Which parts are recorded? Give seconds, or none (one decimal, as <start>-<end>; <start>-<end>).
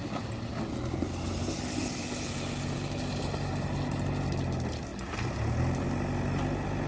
0.0-6.9